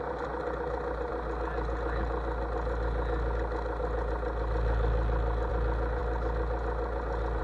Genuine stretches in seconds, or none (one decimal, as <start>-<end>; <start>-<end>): 0.0-7.4